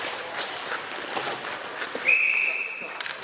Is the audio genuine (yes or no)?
no